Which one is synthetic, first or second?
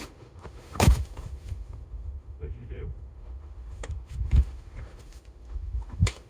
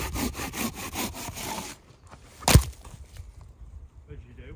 first